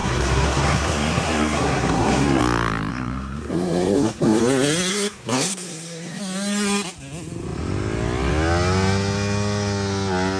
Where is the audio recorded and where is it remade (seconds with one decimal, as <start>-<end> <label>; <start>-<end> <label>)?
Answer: 0.0-2.4 remade; 2.4-2.9 recorded; 2.9-4.4 remade; 4.4-4.9 recorded; 4.9-6.2 remade; 6.2-10.4 recorded